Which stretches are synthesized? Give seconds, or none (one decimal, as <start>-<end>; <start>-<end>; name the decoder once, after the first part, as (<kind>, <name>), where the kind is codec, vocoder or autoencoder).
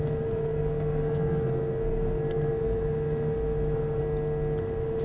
0.0-4.0 (codec, SNAC); 4.6-5.0